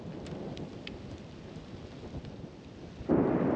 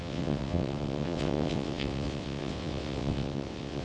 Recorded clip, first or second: first